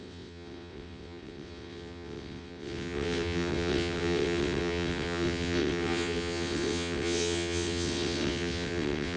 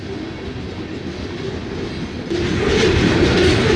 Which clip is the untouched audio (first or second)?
second